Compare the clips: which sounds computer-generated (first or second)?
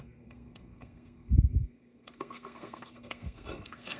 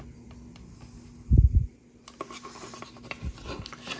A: first